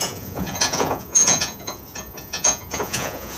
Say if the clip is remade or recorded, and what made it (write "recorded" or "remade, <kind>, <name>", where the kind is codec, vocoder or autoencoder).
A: remade, vocoder, Vocos